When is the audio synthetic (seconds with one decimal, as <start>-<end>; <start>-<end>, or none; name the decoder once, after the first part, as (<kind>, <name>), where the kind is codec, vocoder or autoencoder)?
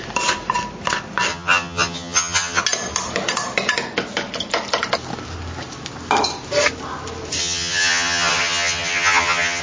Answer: 1.3-2.6 (vocoder, HiFi-GAN); 7.4-9.6